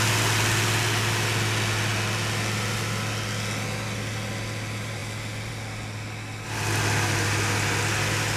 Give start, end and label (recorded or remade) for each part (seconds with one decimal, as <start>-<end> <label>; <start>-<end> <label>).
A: 0.0-8.4 recorded